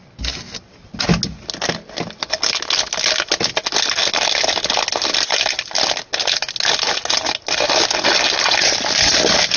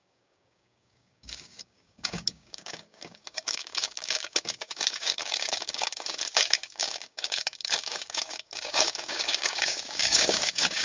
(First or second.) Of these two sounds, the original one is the first